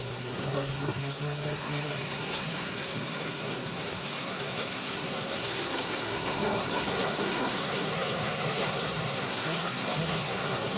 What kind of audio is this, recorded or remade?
remade